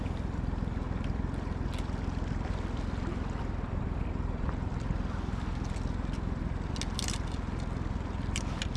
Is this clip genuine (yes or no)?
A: yes